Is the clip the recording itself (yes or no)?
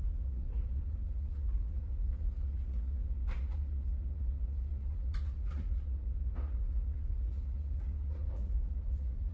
no